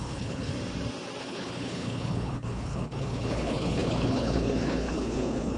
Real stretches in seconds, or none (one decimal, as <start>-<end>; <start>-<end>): 0.5-1.2

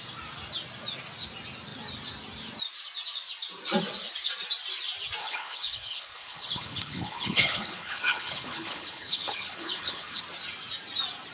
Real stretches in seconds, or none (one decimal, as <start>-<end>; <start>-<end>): 0.0-5.2; 10.2-11.3

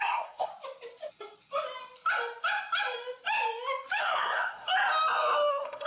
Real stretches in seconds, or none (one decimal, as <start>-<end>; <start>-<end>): 0.5-4.0; 4.7-5.5

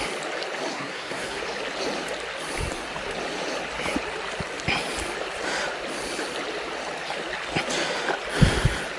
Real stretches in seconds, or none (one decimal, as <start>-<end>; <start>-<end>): 0.0-0.7; 1.4-9.0

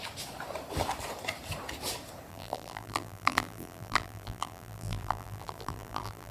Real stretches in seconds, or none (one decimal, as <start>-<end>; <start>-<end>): 0.0-2.3

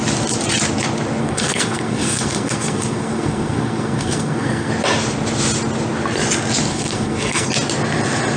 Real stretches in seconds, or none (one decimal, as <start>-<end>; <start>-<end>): 0.0-1.2; 4.7-6.7; 7.5-8.4